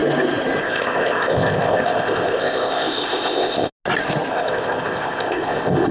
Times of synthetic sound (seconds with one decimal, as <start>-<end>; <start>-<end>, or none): 0.6-3.7; 4.3-5.9